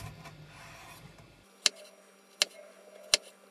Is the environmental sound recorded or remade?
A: recorded